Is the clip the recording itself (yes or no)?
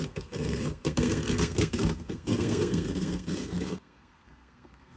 no